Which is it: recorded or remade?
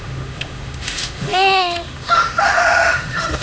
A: remade